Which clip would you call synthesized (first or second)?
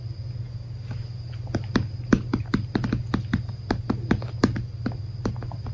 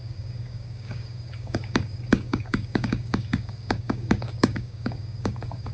second